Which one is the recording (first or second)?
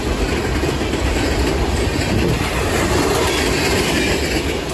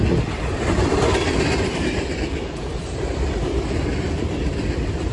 first